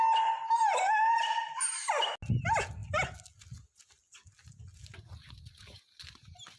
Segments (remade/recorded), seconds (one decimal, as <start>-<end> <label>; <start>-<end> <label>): 0.0-6.6 recorded